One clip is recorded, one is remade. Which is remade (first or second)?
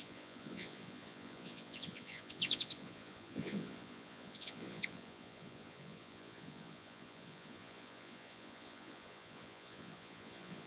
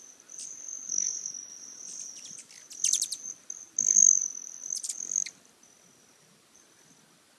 first